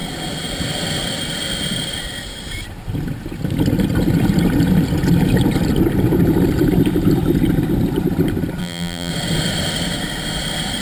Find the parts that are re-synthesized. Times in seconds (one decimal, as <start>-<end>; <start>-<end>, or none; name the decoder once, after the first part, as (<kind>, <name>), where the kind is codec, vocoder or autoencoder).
8.6-9.1 (vocoder, BigVGAN v2)